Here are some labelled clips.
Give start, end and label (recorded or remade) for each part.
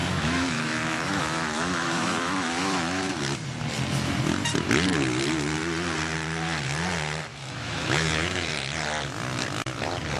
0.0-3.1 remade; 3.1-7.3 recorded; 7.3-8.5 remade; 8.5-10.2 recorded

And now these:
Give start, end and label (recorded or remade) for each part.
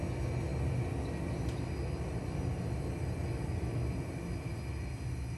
0.0-5.4 recorded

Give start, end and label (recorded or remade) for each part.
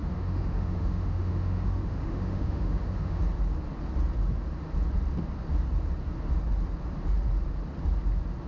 0.0-3.2 remade; 3.2-8.5 recorded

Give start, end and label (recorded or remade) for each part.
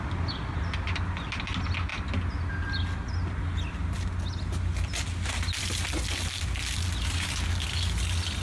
0.0-8.4 recorded